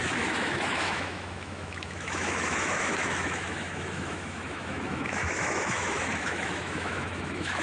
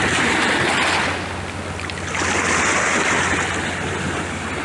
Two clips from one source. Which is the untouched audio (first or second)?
second